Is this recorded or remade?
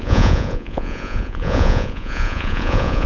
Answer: remade